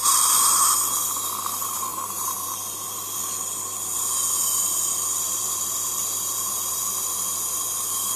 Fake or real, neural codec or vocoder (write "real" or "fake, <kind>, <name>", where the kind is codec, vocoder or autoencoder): fake, vocoder, BigVGAN v2